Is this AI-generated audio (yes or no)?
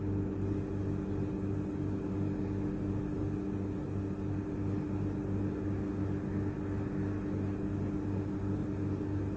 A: no